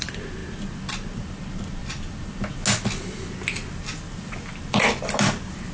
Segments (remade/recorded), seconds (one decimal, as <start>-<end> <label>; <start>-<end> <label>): 0.0-5.7 recorded